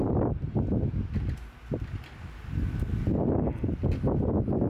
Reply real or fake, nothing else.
real